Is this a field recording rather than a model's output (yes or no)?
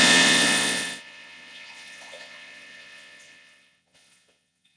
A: no